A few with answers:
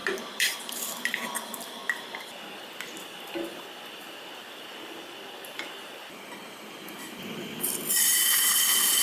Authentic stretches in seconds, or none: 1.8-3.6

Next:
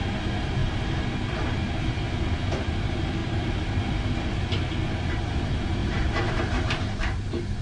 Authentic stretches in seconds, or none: 0.0-3.2; 3.9-5.8; 6.4-7.6